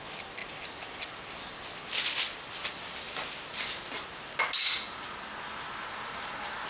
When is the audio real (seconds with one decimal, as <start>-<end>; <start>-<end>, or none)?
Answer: 0.0-6.7